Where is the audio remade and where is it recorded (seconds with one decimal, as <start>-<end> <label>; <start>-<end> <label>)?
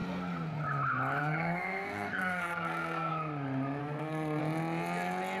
0.0-1.2 recorded; 1.2-3.1 remade; 3.1-3.8 recorded; 3.8-4.4 remade; 4.4-5.4 recorded